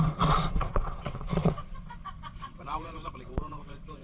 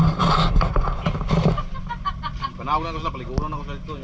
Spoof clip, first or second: first